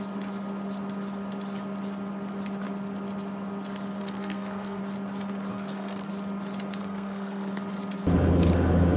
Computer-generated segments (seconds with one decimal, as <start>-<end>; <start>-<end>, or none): 4.0-4.8; 5.5-6.1; 6.8-7.5